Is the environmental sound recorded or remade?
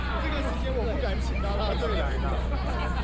recorded